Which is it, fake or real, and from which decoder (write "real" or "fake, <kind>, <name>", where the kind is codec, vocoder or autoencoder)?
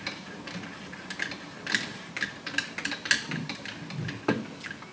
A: real